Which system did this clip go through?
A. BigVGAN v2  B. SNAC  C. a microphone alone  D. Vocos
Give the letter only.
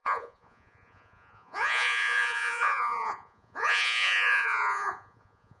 D